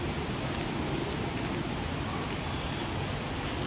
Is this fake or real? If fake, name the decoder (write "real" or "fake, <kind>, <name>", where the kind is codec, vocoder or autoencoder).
real